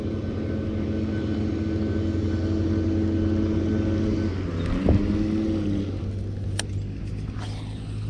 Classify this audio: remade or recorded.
recorded